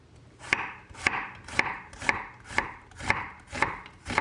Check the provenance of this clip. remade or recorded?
remade